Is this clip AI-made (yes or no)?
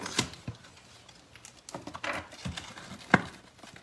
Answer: no